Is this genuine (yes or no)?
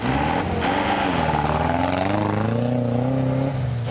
yes